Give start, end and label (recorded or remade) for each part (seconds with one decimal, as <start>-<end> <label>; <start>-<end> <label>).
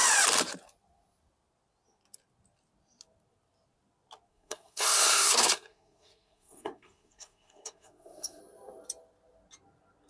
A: 0.0-4.3 recorded; 4.3-8.4 remade; 8.4-10.1 recorded